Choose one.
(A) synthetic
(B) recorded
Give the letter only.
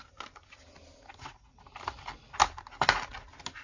B